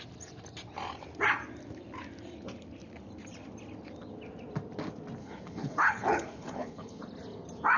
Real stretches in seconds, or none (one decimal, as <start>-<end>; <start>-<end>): 0.0-5.2; 7.0-7.8

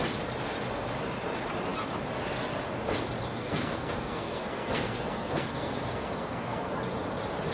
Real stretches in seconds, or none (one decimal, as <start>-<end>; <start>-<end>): 0.0-3.3; 6.7-7.5

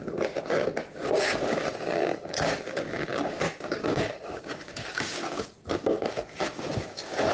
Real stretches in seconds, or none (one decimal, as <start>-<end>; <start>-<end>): none

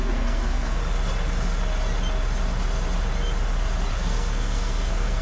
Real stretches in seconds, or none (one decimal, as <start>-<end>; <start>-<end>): 0.8-3.9

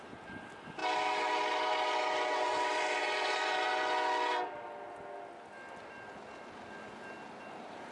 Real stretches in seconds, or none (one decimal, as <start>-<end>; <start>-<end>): 3.7-7.5

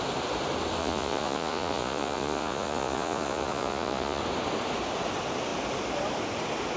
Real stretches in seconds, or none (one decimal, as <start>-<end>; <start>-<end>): 0.0-0.8; 4.2-6.8

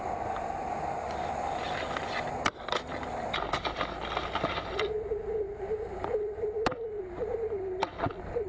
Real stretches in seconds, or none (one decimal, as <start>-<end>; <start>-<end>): 0.0-8.5